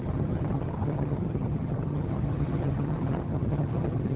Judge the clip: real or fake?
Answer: fake